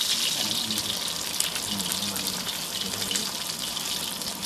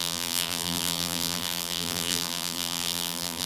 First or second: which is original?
first